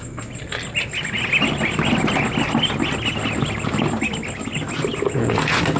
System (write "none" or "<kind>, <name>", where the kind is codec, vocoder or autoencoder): none